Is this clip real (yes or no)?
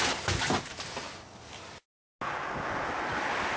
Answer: yes